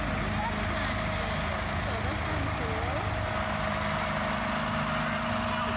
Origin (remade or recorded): recorded